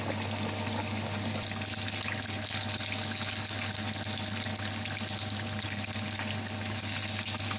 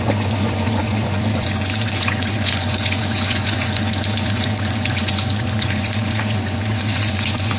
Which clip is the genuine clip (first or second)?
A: first